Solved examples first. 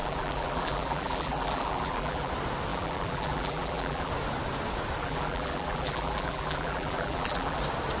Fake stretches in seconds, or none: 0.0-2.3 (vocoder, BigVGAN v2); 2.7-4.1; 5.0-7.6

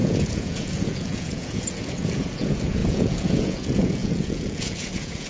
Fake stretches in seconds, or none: 0.0-5.3 (vocoder, Vocos)

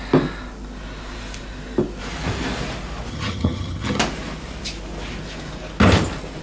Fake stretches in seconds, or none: 3.1-4.0 (vocoder, HiFi-GAN)